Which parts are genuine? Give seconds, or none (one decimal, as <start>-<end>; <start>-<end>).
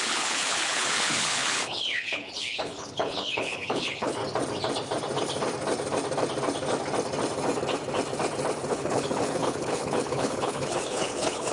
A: 4.2-8.7